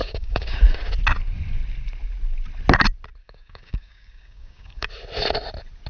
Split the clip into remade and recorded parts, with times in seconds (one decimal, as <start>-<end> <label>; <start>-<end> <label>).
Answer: 0.0-0.6 remade; 0.6-3.2 recorded; 3.2-4.9 remade; 4.9-5.9 recorded